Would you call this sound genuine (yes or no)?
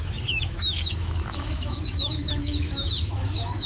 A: no